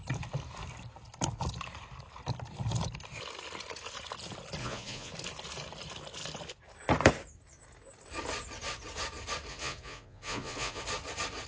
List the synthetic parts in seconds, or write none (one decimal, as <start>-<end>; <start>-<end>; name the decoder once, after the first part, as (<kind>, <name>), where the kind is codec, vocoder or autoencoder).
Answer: 4.6-5.1 (vocoder, Vocos); 9.5-10.8